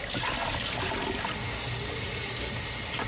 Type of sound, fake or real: real